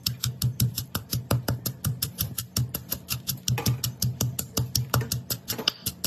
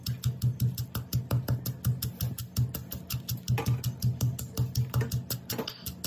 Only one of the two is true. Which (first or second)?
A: second